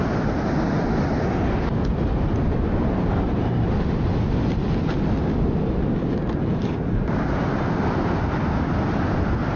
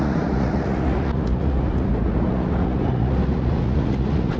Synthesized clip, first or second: second